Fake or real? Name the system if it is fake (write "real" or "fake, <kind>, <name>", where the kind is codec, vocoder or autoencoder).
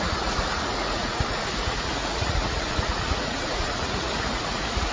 fake, vocoder, Vocos